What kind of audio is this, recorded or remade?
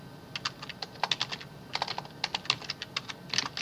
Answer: recorded